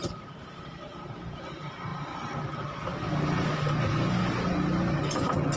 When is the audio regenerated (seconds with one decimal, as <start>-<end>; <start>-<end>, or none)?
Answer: none